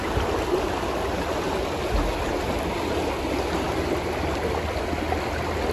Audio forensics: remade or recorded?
recorded